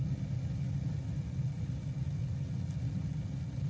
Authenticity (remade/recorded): recorded